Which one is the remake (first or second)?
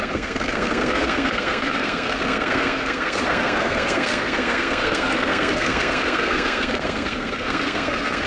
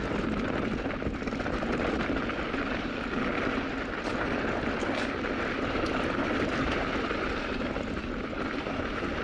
first